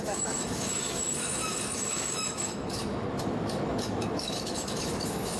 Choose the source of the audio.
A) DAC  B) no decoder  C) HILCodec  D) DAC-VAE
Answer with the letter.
D